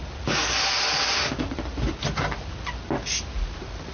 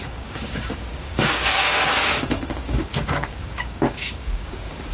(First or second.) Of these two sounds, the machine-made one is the second